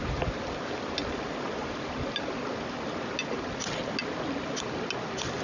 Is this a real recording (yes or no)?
yes